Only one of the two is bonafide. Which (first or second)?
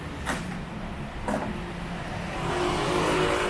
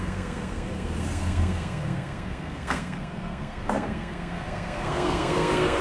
first